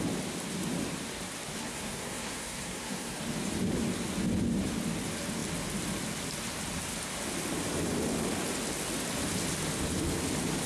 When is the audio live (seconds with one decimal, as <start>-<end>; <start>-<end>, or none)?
0.0-1.6; 3.2-10.7